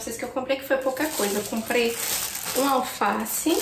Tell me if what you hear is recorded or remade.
recorded